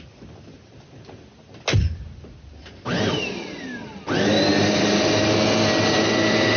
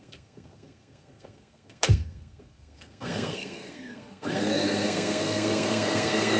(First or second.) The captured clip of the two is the first